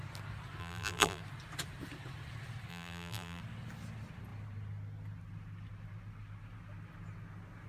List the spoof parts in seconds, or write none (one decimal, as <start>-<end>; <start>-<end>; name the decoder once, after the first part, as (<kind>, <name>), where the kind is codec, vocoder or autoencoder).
0.6-1.2 (vocoder, BigVGAN v2); 2.7-3.4